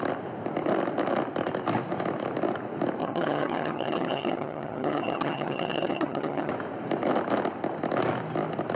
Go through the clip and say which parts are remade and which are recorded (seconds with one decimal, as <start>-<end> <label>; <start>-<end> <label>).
0.0-3.0 recorded; 3.0-6.5 remade; 6.5-8.8 recorded

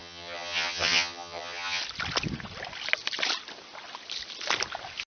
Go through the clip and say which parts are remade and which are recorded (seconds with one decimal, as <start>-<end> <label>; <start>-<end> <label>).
0.0-1.8 remade; 1.8-5.1 recorded

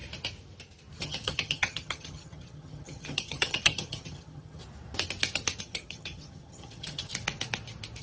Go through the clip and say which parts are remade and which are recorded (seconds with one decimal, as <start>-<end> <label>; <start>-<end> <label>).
0.0-1.0 recorded; 1.0-4.6 remade; 4.6-5.6 recorded; 5.6-7.1 remade; 7.1-8.0 recorded

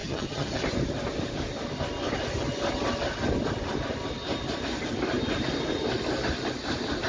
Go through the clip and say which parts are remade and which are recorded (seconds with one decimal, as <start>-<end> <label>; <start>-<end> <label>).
0.0-0.6 remade; 0.6-7.1 recorded

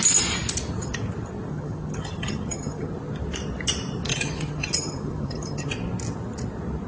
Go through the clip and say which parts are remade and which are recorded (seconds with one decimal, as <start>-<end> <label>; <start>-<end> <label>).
0.0-1.5 recorded; 1.5-2.9 remade; 2.9-4.1 recorded; 4.1-5.7 remade; 5.7-6.9 recorded

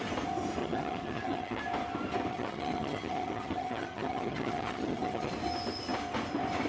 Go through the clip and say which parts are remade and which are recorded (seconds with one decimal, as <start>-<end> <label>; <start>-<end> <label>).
0.0-0.6 recorded; 0.6-1.6 remade; 1.6-2.3 recorded; 2.3-5.3 remade; 5.3-6.7 recorded

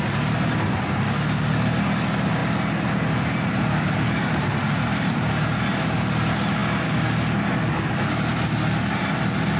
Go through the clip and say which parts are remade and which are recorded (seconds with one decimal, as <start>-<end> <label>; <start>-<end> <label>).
0.0-9.6 recorded

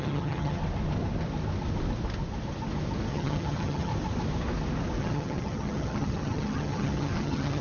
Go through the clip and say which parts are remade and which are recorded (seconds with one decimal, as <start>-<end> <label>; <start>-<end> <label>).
0.0-0.6 remade; 0.6-3.1 recorded; 3.1-3.9 remade; 3.9-5.0 recorded; 5.0-7.6 remade